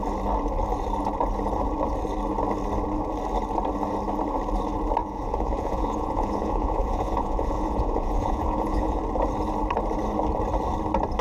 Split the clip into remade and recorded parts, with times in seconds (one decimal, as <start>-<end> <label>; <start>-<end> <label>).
0.0-5.0 recorded; 5.0-9.0 remade; 9.0-11.2 recorded